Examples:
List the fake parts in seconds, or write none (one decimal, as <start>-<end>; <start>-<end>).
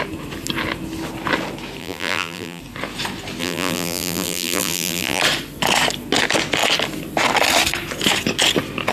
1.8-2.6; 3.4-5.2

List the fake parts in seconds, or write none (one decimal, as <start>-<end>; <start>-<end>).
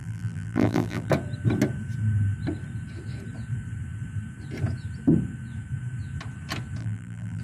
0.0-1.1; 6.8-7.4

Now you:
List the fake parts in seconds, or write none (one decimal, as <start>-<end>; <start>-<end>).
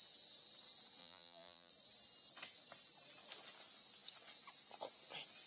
1.0-1.7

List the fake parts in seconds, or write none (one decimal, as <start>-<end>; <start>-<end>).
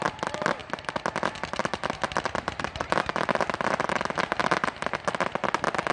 none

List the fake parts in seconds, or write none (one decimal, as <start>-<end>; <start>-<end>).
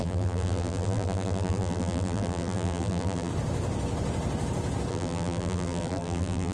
0.0-3.3; 4.9-6.5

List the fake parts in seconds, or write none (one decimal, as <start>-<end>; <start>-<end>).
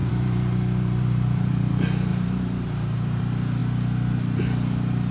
0.0-1.7; 2.1-3.2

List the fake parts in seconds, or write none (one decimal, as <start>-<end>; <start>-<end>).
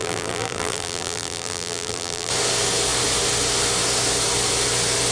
0.0-2.3